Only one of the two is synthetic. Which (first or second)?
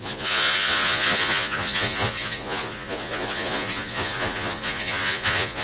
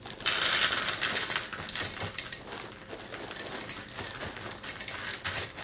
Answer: first